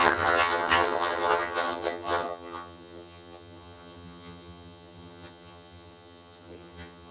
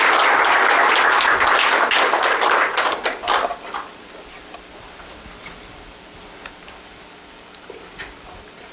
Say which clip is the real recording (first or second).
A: second